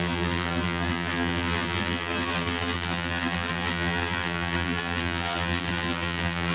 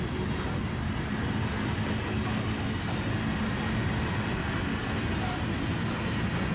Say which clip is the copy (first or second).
first